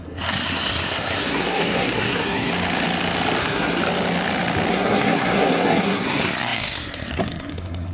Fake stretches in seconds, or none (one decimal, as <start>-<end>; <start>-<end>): 0.0-2.5; 3.4-3.8; 4.7-7.9